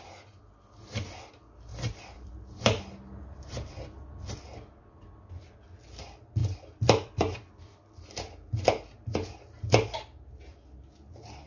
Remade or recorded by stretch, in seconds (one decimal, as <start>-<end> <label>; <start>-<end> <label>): 0.0-1.7 recorded; 1.7-2.3 remade; 2.3-6.4 recorded; 6.4-7.5 remade; 7.5-11.5 recorded